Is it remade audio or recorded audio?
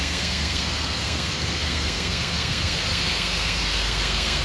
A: remade